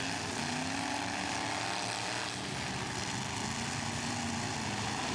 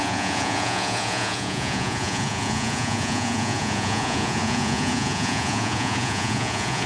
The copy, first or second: second